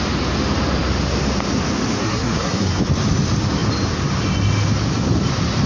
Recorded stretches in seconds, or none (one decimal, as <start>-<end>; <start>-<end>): 0.0-2.0; 2.8-5.7